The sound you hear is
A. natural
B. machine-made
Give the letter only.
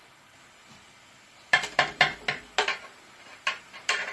B